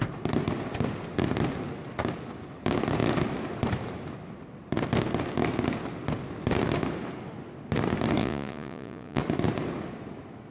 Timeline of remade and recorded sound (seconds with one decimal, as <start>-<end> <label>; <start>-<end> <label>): 0.0-8.2 recorded; 8.2-9.2 remade; 9.2-10.5 recorded